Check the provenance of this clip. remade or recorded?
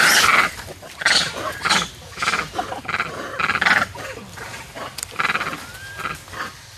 recorded